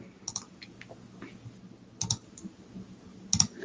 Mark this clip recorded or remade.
recorded